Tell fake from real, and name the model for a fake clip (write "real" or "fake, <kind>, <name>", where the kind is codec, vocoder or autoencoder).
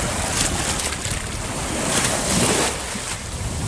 real